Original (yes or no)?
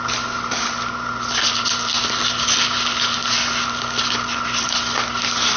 yes